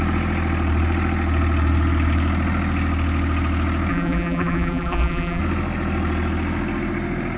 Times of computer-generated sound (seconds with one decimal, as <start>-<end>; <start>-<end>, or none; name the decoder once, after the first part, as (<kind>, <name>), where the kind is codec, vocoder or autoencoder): 3.9-5.4 (vocoder, BigVGAN v2)